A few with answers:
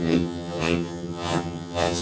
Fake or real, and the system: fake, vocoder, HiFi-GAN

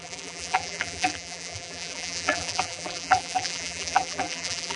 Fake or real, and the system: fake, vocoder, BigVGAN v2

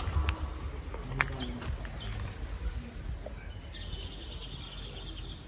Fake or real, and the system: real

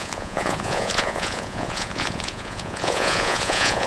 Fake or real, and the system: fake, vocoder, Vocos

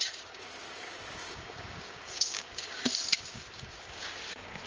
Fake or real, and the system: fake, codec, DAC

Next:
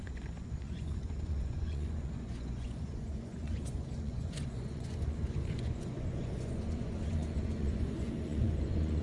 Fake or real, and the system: fake, vocoder, Vocos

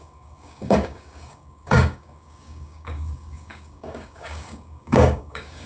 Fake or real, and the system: fake, codec, DAC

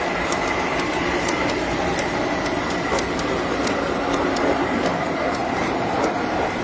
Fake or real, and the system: fake, vocoder, BigVGAN v2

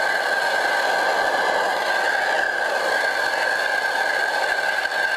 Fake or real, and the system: real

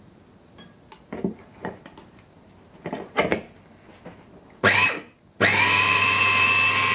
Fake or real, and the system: real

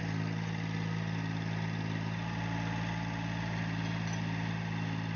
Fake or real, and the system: real